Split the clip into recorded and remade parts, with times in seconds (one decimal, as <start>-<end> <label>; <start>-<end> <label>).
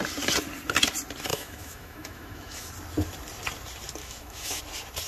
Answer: 0.0-1.3 recorded; 1.3-2.7 remade; 2.7-4.0 recorded; 4.0-4.6 remade; 4.6-5.1 recorded